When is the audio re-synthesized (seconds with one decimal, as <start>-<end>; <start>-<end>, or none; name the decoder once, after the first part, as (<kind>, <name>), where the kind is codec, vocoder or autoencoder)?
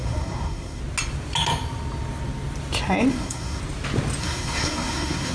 0.0-0.8 (codec, SNAC); 3.1-3.6; 4.2-5.3